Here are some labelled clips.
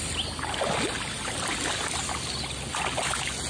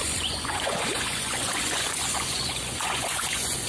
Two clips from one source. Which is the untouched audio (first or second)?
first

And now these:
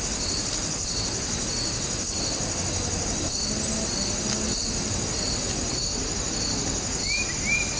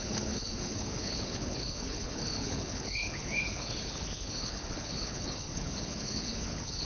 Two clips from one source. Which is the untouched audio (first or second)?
first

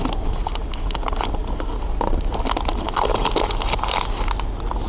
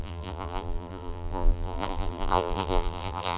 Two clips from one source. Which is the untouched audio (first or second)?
first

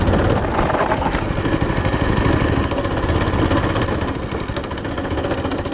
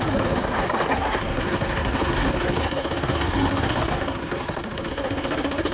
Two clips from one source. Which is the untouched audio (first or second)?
first